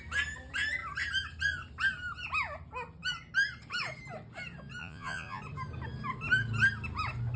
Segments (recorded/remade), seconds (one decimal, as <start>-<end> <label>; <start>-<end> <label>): 0.0-4.8 recorded; 4.8-5.4 remade; 5.4-7.4 recorded